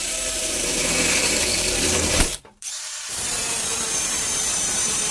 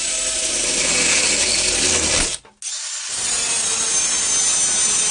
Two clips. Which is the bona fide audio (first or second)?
second